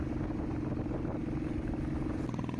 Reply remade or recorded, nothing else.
recorded